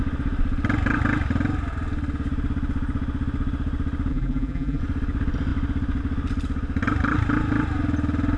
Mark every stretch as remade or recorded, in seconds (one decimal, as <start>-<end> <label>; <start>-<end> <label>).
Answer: 0.0-4.1 recorded; 4.1-4.8 remade; 4.8-8.4 recorded